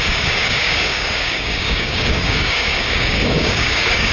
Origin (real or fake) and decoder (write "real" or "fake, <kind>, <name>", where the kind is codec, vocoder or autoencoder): fake, codec, DAC